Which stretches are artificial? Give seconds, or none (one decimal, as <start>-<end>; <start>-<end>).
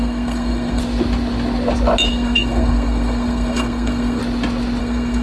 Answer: 0.0-0.8; 2.1-4.2; 4.8-5.2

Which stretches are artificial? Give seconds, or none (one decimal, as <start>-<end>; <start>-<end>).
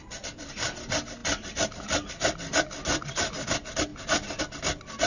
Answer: none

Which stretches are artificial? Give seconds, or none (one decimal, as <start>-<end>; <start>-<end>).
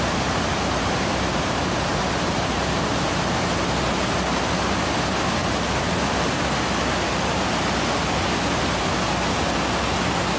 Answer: 0.5-3.5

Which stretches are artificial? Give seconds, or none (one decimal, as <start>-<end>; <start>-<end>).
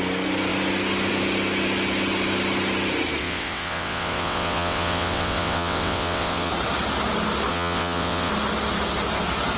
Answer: 3.2-6.5; 7.5-8.3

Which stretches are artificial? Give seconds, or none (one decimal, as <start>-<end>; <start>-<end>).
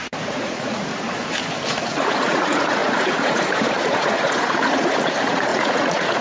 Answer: 0.0-0.9; 1.7-6.2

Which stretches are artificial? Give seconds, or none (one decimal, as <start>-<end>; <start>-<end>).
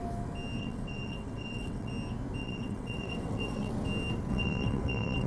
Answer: 0.6-1.9; 2.4-3.7; 4.3-5.3